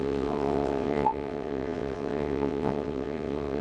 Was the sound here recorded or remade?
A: remade